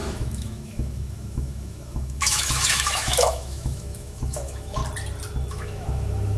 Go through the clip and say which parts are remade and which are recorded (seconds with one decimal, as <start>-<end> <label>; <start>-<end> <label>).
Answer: 0.0-4.8 remade; 4.8-5.5 recorded; 5.5-6.4 remade